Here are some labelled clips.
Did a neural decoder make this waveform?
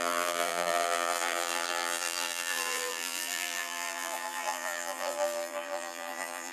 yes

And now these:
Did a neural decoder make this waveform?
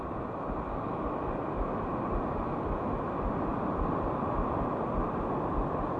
no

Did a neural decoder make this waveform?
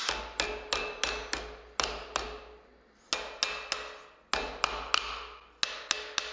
no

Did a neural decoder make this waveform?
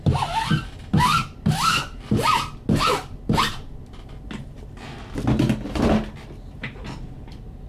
no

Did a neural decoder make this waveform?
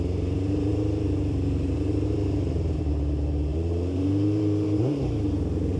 yes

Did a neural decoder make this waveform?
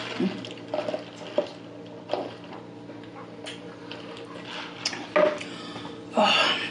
no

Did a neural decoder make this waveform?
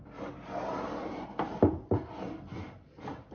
no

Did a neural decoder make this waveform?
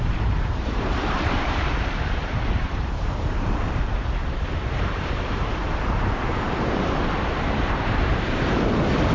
yes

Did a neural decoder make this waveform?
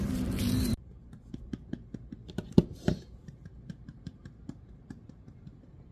yes